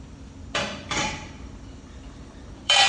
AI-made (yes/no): yes